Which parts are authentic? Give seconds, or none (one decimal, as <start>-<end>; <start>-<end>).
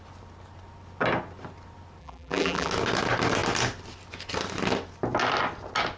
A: 0.0-2.0; 2.7-6.0